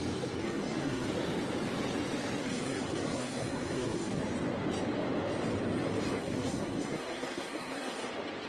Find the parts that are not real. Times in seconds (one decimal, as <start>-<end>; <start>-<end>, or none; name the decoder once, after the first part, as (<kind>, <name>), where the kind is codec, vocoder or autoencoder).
0.4-1.1 (codec, SNAC); 2.4-4.2; 6.2-8.1